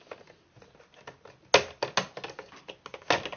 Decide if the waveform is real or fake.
real